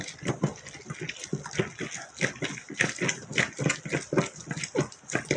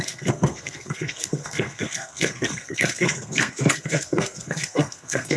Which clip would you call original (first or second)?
first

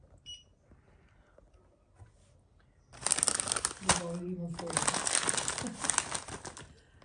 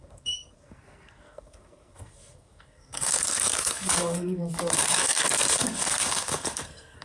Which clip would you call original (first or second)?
first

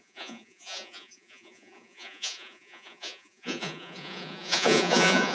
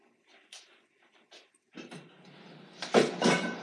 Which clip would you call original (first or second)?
second